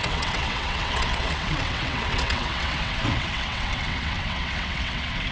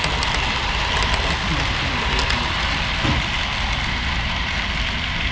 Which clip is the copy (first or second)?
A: first